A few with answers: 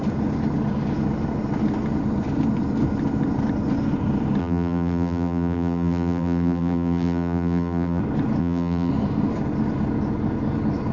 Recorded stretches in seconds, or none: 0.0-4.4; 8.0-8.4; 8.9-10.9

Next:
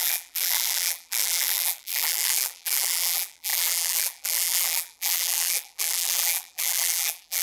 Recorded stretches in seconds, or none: none

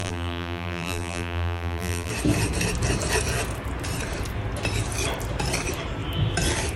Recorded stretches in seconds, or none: 2.1-6.8

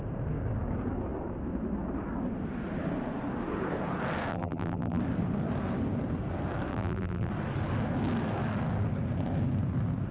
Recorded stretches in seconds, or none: 0.0-4.3; 5.0-6.7; 7.3-10.1

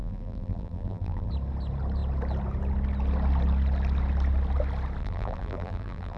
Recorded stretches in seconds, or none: 1.3-5.0

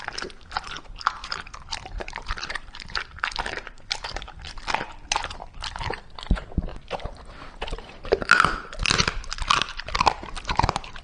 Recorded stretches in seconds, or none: 0.0-1.2; 3.5-11.0

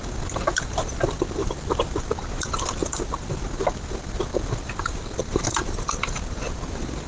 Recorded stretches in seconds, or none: 0.0-1.4; 2.0-7.1

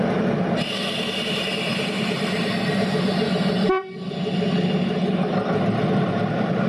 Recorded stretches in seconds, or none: 0.0-1.7; 2.5-6.7